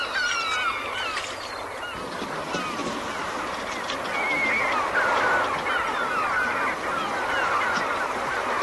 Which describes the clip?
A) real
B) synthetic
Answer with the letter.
A